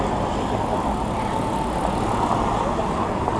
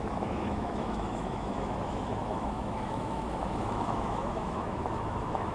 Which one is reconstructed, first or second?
second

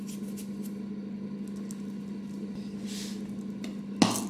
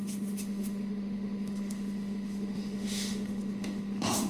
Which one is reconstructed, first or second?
second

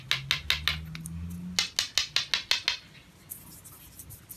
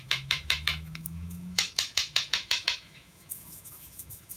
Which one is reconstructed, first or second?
second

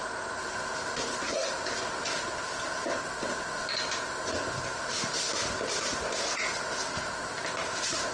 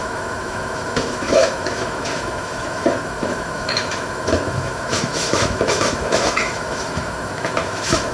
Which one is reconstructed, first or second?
second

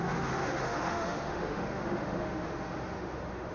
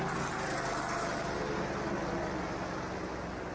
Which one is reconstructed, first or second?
first